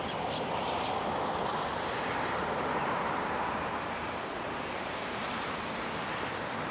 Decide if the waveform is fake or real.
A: fake